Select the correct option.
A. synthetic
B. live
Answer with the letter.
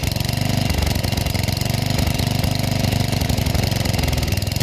B